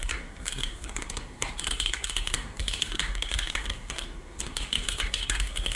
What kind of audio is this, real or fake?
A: fake